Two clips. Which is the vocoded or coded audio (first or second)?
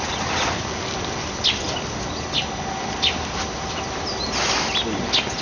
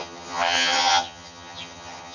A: second